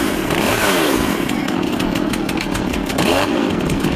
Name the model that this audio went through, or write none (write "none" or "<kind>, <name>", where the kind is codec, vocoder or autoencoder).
codec, SNAC